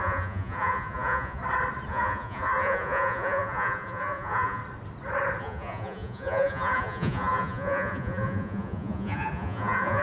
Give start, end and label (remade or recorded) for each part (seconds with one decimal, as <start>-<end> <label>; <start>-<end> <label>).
0.0-1.4 remade; 1.4-1.9 recorded; 1.9-4.6 remade; 4.6-5.4 recorded; 5.4-10.0 remade